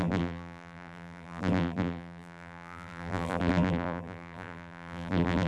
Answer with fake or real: fake